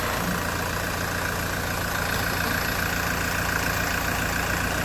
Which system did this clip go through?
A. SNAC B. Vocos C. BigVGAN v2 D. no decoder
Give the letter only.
D